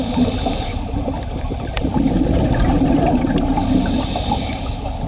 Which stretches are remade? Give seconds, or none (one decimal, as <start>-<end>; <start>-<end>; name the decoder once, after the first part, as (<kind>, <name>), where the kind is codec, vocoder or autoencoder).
0.0-2.6 (vocoder, BigVGAN v2)